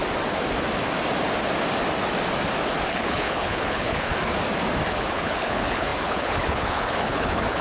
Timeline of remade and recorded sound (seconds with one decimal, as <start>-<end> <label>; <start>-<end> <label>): 0.0-2.9 recorded; 2.9-4.1 remade; 4.1-4.9 recorded; 4.9-7.6 remade